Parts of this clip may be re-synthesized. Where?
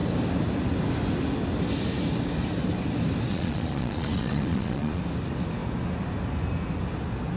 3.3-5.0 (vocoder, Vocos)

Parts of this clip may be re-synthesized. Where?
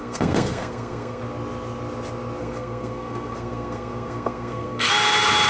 0.0-1.2 (codec, SNAC); 2.4-4.9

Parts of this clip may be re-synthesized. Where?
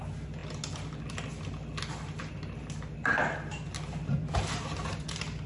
none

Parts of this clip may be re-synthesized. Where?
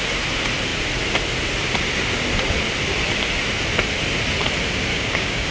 4.9-5.5 (codec, DAC)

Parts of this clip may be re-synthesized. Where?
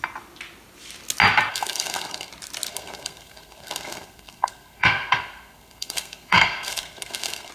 1.5-2.3 (codec, SNAC); 2.7-7.5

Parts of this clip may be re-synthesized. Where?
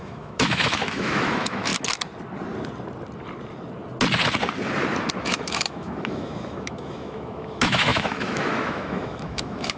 0.0-1.7 (autoencoder, DAC-VAE); 5.2-9.8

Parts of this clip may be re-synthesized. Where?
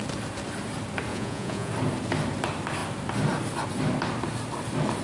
1.1-1.7 (vocoder, Vocos)